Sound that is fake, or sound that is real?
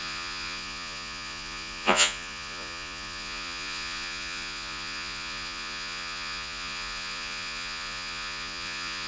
fake